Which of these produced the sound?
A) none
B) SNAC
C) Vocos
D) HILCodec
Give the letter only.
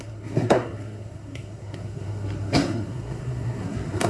B